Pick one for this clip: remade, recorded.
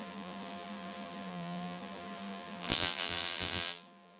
remade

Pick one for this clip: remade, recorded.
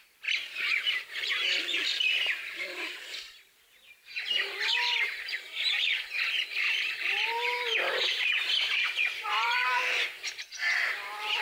remade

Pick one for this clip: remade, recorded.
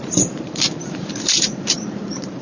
remade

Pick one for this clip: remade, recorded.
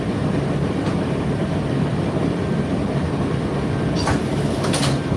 remade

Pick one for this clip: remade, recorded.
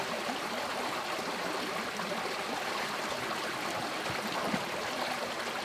recorded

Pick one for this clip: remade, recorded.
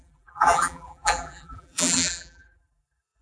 remade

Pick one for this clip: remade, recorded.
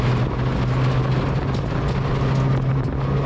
recorded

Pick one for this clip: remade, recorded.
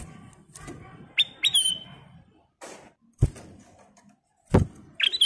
recorded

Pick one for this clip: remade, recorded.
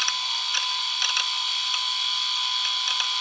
recorded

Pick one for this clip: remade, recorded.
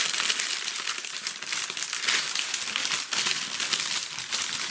remade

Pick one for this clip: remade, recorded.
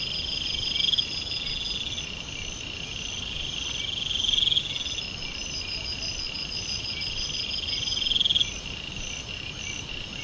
recorded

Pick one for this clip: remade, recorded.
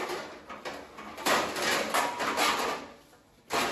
remade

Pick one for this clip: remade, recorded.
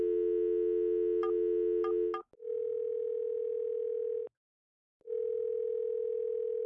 recorded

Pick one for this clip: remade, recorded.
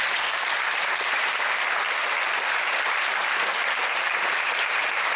remade